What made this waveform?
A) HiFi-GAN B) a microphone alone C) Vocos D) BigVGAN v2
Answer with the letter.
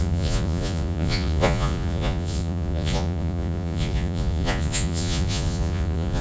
C